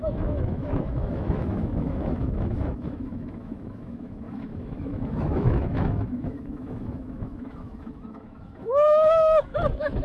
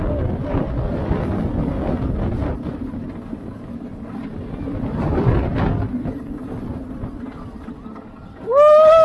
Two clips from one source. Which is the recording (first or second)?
second